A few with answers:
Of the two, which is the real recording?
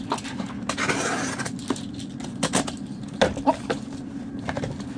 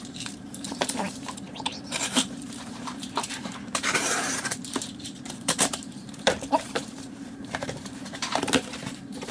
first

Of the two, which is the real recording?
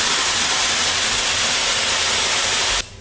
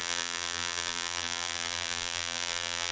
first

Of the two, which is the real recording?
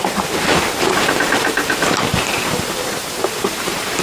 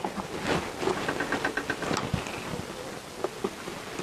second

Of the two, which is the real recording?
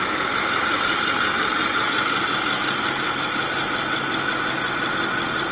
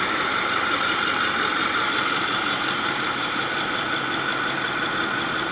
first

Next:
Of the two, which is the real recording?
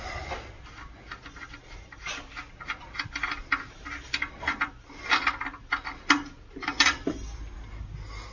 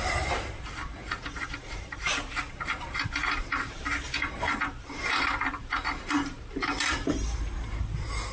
first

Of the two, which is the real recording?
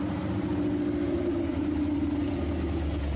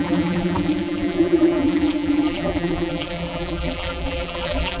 first